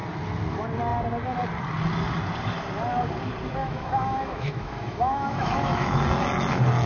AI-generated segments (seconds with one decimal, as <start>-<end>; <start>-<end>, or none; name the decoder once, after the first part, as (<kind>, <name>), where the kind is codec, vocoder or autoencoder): 3.6-6.0 (autoencoder, DAC-VAE)